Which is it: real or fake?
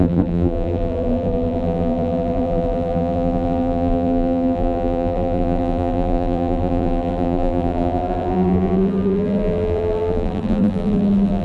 fake